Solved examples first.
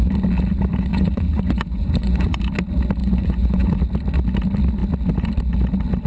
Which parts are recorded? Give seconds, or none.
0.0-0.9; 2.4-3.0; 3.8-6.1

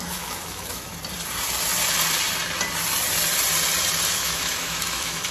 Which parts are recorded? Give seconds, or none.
0.9-4.1

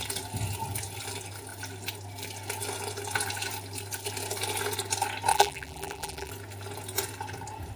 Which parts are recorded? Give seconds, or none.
0.0-5.3; 6.3-7.8

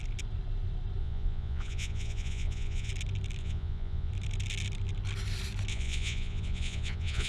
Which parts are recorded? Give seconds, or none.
0.0-1.0; 2.9-3.4; 4.1-5.7